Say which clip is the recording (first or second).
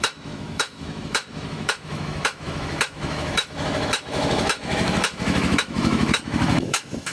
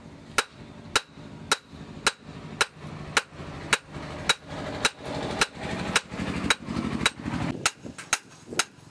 second